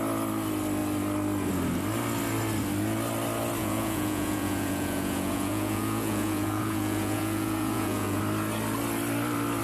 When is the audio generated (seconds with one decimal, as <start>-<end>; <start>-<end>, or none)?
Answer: 3.6-8.2